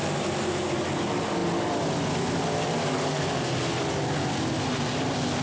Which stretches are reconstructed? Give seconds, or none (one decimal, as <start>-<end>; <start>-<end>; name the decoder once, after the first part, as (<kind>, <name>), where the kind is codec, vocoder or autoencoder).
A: none